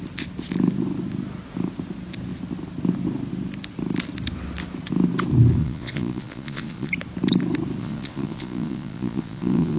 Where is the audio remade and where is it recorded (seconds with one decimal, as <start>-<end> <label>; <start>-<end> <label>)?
0.0-5.6 recorded; 5.6-6.9 remade; 6.9-7.8 recorded; 7.8-9.8 remade